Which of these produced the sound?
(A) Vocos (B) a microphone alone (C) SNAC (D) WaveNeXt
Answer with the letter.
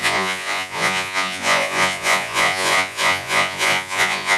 A